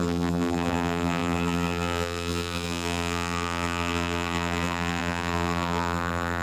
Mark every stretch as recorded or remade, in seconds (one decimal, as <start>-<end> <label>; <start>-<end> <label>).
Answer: 0.0-6.4 remade